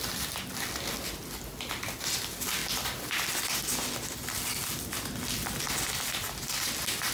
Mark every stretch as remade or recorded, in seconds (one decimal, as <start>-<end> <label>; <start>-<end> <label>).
0.0-7.1 recorded